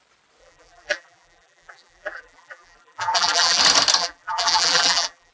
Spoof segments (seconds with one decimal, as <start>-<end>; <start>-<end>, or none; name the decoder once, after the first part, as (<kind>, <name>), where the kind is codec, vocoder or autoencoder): 0.4-3.6 (vocoder, BigVGAN v2); 4.0-5.3